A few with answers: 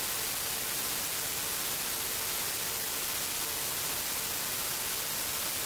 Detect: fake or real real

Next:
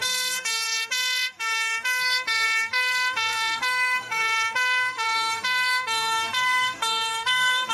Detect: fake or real fake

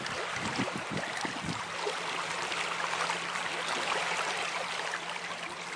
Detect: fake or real real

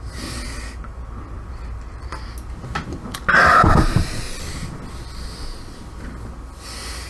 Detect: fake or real real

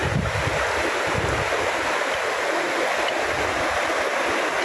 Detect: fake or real real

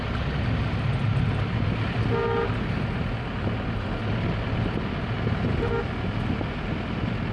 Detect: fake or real real